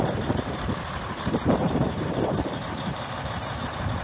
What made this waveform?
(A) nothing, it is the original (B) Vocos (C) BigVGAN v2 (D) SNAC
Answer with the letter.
C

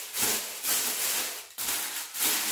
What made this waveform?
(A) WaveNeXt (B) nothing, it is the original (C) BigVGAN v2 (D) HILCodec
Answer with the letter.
B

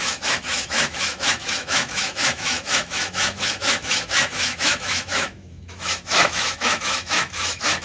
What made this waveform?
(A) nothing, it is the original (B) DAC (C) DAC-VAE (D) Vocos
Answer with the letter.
C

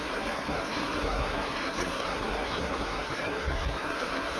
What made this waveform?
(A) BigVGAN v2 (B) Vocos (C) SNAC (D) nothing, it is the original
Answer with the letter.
C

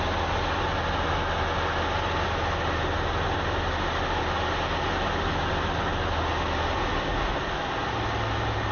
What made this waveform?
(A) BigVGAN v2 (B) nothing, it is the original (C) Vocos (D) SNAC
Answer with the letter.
B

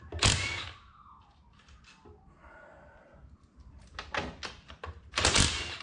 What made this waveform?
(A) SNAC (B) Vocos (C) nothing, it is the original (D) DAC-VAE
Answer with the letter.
C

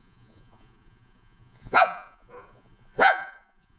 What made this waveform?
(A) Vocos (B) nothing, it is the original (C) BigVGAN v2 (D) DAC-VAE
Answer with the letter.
A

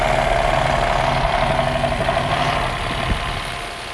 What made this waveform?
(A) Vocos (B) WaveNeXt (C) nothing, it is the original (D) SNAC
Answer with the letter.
C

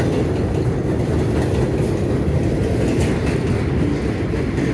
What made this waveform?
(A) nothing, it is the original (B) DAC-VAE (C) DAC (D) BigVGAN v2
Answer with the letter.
A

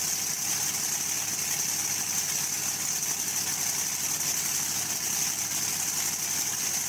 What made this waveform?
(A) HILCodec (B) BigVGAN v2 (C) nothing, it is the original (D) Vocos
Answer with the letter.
C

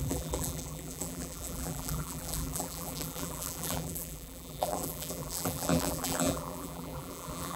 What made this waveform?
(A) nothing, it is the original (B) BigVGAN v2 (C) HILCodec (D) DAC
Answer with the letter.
B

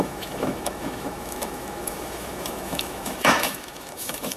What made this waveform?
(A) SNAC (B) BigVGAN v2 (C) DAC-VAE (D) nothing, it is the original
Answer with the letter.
C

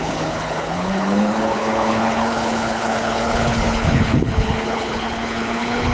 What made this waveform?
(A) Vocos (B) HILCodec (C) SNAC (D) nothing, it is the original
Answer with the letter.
B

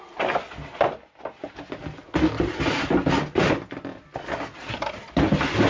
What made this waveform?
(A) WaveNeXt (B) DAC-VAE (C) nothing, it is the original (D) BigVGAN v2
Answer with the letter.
C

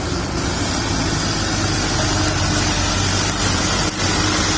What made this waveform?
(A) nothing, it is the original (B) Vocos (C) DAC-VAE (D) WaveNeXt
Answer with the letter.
A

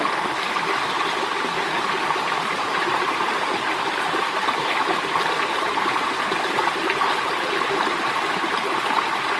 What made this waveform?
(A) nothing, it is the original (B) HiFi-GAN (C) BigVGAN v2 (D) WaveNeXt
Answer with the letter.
A